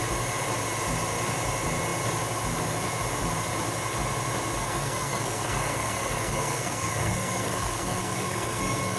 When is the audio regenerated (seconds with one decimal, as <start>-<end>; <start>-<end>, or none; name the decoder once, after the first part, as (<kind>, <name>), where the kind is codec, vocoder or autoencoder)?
4.6-9.0 (codec, SNAC)